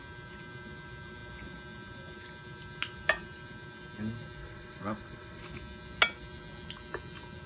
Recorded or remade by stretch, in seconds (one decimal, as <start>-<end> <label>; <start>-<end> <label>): 0.0-4.4 recorded; 4.4-5.4 remade; 5.4-7.5 recorded